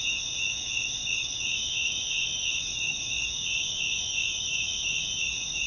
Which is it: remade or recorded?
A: remade